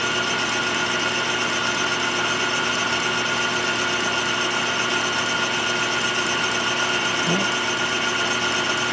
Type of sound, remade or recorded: recorded